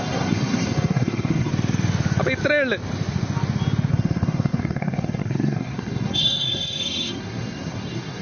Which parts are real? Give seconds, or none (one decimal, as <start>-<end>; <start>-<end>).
1.5-3.9